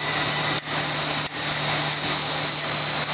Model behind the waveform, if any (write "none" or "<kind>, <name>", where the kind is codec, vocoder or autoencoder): none